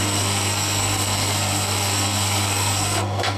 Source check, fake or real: fake